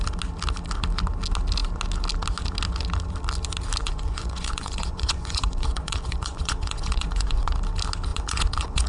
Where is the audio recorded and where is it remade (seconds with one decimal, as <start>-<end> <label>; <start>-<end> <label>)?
0.0-3.8 recorded; 3.8-7.5 remade; 7.5-8.1 recorded; 8.1-8.9 remade